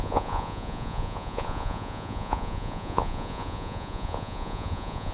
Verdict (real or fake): fake